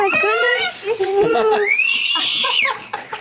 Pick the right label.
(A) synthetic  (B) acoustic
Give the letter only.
A